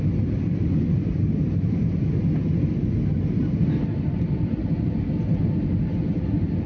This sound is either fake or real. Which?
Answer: real